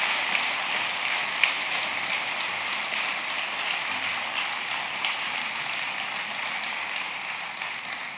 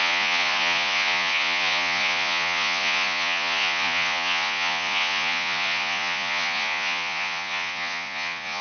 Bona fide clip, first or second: first